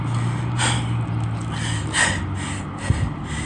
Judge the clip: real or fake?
real